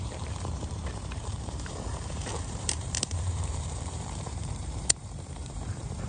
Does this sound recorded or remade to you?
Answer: remade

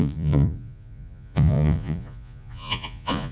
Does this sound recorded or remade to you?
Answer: remade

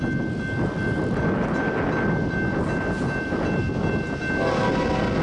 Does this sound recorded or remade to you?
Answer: recorded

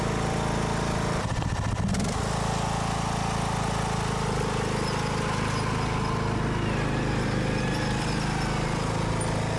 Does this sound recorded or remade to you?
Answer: recorded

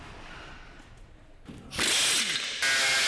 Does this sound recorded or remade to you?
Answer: recorded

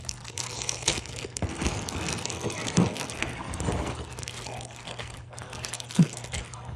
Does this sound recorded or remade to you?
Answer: remade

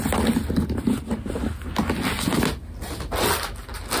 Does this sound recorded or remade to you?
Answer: recorded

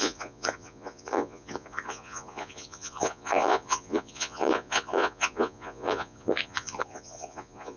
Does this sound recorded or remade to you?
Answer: remade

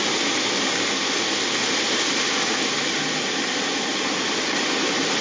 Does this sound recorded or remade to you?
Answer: recorded